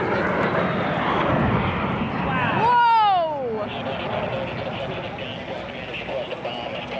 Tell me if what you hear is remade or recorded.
recorded